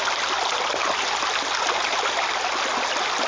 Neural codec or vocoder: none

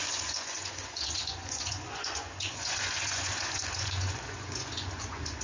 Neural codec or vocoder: vocoder, Vocos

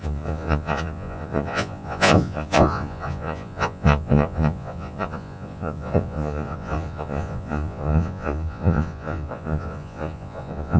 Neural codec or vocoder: vocoder, Vocos